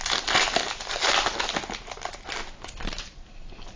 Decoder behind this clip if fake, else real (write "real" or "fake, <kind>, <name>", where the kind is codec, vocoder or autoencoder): real